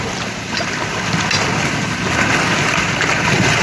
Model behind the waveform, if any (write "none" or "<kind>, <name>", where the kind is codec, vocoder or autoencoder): none